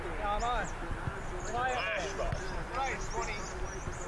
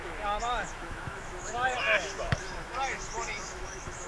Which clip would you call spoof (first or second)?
second